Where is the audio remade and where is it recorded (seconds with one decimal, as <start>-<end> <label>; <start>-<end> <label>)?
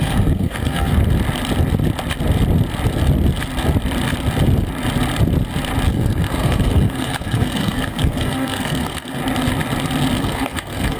0.0-1.0 remade; 1.0-5.9 recorded; 5.9-9.2 remade; 9.2-10.2 recorded; 10.2-11.0 remade